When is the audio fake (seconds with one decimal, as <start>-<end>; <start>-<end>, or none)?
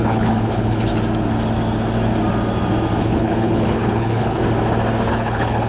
0.0-0.9; 3.0-4.4; 5.1-5.7